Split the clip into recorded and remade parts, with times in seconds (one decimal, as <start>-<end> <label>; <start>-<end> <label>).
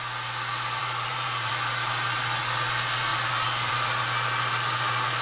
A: 0.0-0.8 recorded; 0.8-1.5 remade; 1.5-5.2 recorded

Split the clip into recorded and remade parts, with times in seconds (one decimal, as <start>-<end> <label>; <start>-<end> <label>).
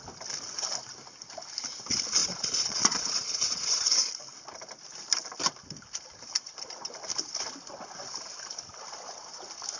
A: 0.0-2.2 recorded; 2.2-4.1 remade; 4.1-9.8 recorded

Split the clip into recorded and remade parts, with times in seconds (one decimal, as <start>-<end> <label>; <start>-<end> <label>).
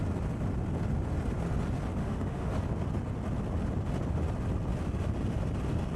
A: 0.0-2.0 recorded; 2.0-2.5 remade; 2.5-6.0 recorded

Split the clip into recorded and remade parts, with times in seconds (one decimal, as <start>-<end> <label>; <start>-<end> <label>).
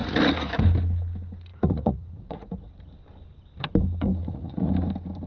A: 0.0-0.6 remade; 0.6-1.5 recorded; 1.5-2.7 remade; 2.7-4.2 recorded; 4.2-4.7 remade; 4.7-5.3 recorded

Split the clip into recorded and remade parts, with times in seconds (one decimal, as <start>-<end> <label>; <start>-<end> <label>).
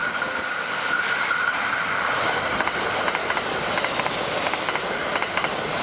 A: 0.0-5.8 recorded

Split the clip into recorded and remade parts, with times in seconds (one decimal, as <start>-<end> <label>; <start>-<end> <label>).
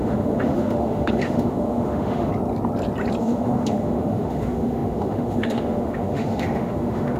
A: 0.0-2.3 remade; 2.3-3.2 recorded; 3.2-7.2 remade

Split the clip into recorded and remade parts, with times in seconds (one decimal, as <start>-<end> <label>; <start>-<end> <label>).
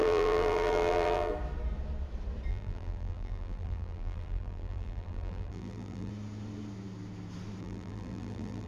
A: 0.0-1.3 remade; 1.3-2.5 recorded; 2.5-6.1 remade; 6.1-7.6 recorded; 7.6-8.7 remade